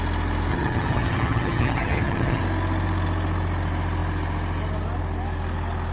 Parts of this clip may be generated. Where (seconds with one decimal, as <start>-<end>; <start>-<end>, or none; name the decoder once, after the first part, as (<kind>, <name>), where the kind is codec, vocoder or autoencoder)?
0.5-2.4 (vocoder, HiFi-GAN)